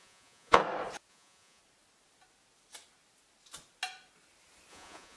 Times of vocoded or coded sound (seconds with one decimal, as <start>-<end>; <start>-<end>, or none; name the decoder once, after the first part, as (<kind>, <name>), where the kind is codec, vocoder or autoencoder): 0.0-0.6 (vocoder, Vocos); 1.1-1.6; 4.7-5.2